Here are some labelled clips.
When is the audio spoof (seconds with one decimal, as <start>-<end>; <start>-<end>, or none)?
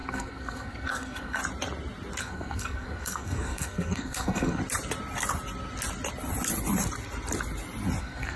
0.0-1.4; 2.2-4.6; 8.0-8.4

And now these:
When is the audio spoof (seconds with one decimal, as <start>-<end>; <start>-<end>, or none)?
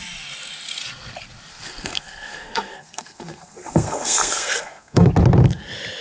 1.5-5.1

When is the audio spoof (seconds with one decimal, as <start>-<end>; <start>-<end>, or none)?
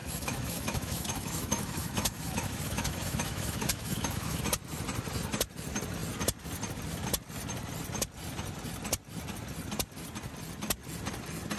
0.0-4.4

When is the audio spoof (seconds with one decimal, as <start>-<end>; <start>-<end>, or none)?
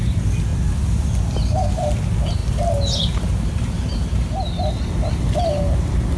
none